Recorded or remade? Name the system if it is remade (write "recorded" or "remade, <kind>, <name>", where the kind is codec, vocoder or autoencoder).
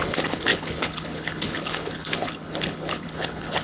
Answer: remade, codec, HILCodec